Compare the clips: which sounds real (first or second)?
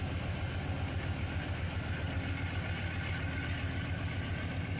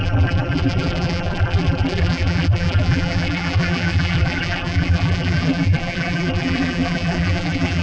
first